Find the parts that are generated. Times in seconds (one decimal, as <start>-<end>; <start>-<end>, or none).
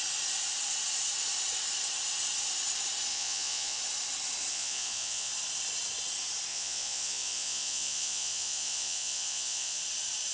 3.1-3.8; 4.5-5.3; 6.5-9.8